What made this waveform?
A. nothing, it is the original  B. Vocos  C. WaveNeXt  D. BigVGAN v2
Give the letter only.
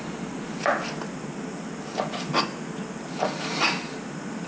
A